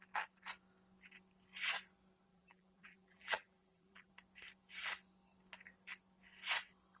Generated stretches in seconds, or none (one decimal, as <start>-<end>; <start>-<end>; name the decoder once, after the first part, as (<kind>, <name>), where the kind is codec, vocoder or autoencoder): 2.3-4.1 (vocoder, BigVGAN v2)